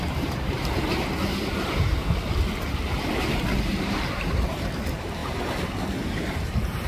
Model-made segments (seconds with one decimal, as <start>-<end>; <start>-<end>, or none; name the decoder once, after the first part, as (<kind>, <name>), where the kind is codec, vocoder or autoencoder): 0.0-2.0 (vocoder, BigVGAN v2); 3.6-5.2; 6.4-6.9